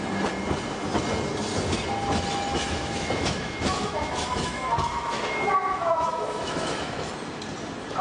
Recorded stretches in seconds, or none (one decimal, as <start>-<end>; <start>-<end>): 0.0-2.5; 7.1-8.0